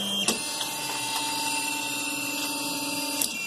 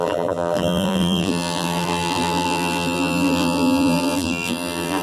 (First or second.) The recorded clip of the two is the first